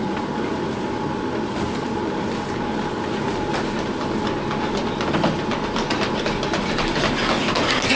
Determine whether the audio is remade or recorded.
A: recorded